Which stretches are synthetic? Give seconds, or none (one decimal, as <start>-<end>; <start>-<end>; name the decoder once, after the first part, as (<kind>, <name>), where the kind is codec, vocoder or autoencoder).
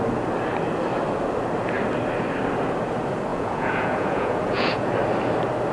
3.3-4.9 (vocoder, Vocos)